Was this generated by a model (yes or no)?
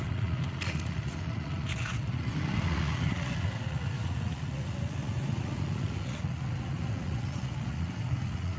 yes